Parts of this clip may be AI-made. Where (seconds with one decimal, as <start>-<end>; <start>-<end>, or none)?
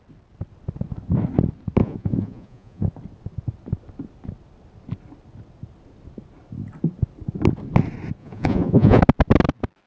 1.8-2.9; 8.2-9.0